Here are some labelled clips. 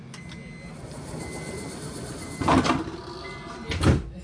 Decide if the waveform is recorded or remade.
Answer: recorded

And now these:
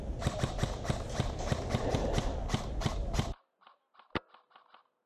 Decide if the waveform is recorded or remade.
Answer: recorded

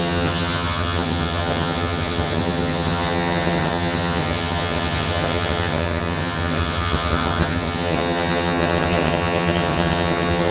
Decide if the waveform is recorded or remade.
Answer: remade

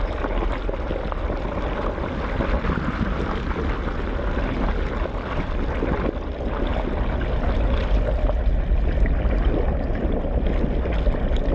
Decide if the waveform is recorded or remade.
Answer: recorded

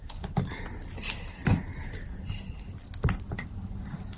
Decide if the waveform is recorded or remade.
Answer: recorded